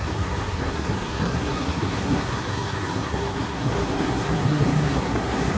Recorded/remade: remade